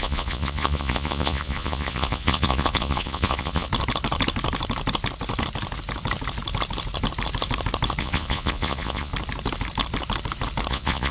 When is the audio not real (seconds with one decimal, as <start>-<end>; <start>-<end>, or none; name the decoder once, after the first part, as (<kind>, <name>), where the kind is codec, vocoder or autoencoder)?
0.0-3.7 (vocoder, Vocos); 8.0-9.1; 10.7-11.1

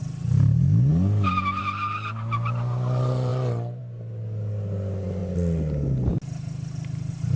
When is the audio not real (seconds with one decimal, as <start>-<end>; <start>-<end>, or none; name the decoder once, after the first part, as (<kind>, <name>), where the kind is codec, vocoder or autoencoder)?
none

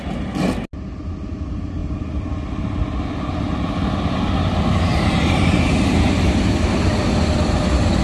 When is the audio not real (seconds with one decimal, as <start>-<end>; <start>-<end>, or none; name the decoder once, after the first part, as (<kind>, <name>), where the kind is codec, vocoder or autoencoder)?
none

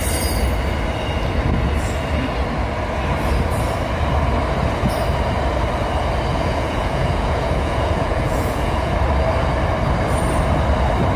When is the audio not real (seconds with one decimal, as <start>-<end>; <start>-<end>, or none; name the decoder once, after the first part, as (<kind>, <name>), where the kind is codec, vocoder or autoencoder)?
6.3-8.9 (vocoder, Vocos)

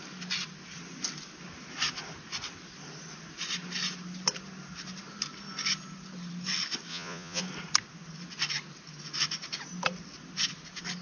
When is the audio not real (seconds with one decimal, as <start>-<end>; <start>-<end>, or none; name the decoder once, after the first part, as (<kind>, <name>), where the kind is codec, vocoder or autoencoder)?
6.9-7.4 (vocoder, Vocos)

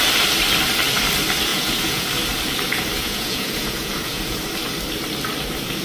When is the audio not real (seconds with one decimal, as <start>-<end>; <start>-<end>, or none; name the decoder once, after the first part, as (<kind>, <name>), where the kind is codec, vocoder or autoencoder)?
1.5-2.1 (vocoder, Vocos); 3.0-4.4

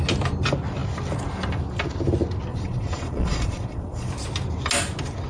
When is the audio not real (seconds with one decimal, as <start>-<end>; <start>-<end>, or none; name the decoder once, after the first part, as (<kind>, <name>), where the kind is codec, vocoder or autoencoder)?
2.5-4.1 (vocoder, Vocos)

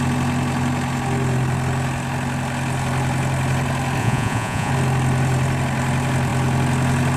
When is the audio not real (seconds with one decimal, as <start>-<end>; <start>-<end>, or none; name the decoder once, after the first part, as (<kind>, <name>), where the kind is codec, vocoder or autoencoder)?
4.0-4.7 (vocoder, Vocos)